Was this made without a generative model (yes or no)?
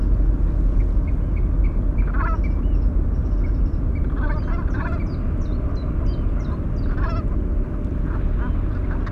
yes